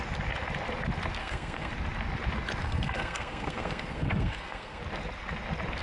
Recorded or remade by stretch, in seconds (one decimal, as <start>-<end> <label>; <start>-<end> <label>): 0.0-1.2 recorded; 1.2-1.7 remade; 1.7-2.6 recorded; 2.6-4.8 remade; 4.8-5.8 recorded

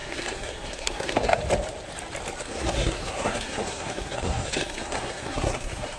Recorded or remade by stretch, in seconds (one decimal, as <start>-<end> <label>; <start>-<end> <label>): 0.0-1.4 remade; 1.4-2.4 recorded; 2.4-6.0 remade

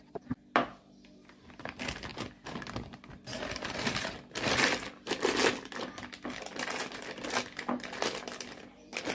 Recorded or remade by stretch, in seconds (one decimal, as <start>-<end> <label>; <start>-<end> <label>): 0.0-9.1 recorded

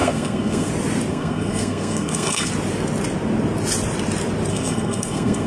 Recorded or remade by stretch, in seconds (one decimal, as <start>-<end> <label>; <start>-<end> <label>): 0.0-0.7 remade; 0.7-1.1 recorded; 1.1-2.5 remade; 2.5-4.5 recorded; 4.5-5.5 remade

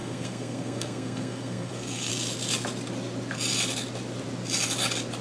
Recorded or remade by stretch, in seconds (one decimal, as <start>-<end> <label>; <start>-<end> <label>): 0.0-2.1 remade; 2.1-5.2 recorded